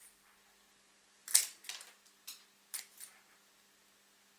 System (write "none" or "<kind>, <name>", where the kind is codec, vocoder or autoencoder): none